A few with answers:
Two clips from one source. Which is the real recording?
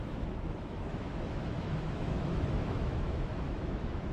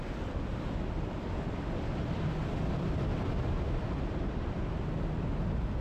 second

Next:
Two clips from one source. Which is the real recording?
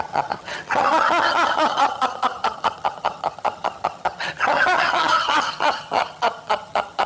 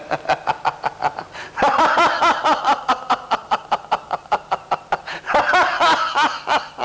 second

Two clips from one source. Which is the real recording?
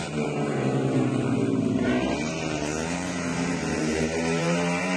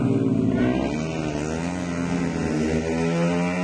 second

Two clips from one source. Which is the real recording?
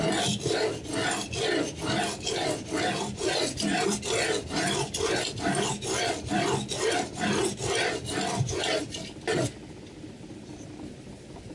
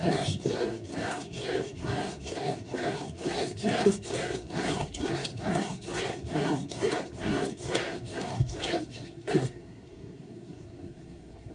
first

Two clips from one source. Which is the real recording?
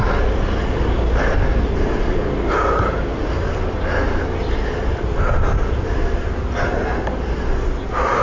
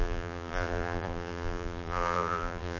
first